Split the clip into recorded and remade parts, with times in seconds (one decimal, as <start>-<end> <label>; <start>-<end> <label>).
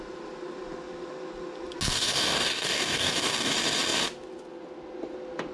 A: 0.0-1.9 recorded; 1.9-3.5 remade; 3.5-5.5 recorded